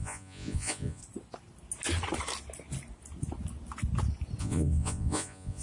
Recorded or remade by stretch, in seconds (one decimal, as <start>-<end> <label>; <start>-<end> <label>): 0.0-1.0 remade; 1.0-4.4 recorded; 4.4-5.6 remade